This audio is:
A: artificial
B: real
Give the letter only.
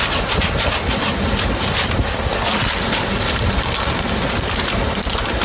B